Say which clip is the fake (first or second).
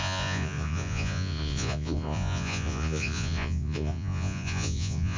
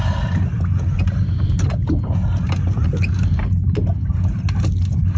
first